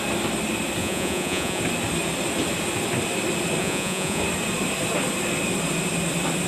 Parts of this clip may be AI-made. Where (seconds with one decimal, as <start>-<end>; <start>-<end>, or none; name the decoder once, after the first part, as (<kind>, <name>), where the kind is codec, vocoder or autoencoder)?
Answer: 0.8-1.6 (vocoder, Vocos); 3.6-4.2